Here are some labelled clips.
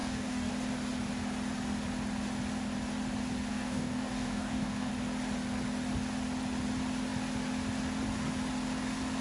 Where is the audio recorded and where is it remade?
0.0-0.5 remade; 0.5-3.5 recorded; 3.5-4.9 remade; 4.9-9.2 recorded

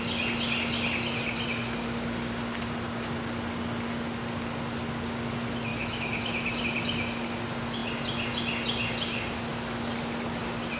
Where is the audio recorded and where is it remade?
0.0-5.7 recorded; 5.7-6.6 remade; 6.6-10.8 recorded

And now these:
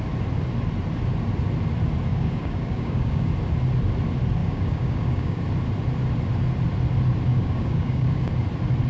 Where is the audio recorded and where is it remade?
0.0-2.1 recorded; 2.1-3.3 remade; 3.3-4.4 recorded; 4.4-5.4 remade; 5.4-7.3 recorded; 7.3-8.3 remade; 8.3-8.9 recorded

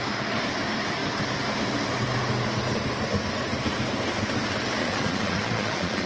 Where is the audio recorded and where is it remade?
0.0-4.8 recorded; 4.8-6.1 remade